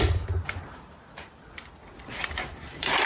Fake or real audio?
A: real